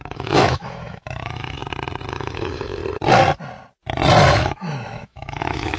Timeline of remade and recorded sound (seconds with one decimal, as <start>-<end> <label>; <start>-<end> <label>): 0.0-1.6 remade; 1.6-2.1 recorded; 2.1-2.8 remade; 2.8-4.3 recorded; 4.3-5.8 remade